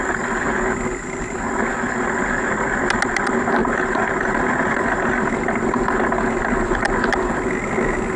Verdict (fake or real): real